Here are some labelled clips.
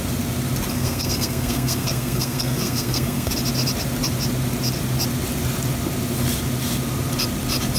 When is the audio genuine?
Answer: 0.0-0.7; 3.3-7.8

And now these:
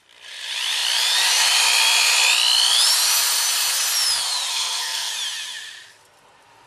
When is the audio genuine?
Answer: 0.0-4.5; 5.1-6.7

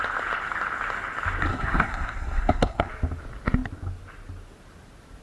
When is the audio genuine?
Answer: 0.0-1.5; 2.9-5.2

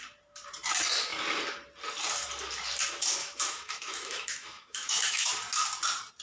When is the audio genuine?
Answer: 0.0-3.2; 5.3-6.2

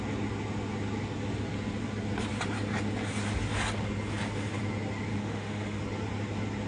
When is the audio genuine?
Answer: 0.0-5.1; 5.8-6.7

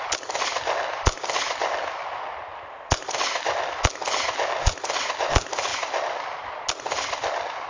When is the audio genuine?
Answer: 0.0-7.7